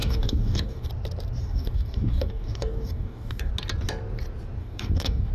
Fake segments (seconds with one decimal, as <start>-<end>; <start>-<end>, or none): 0.0-0.9; 1.4-3.5; 4.6-5.3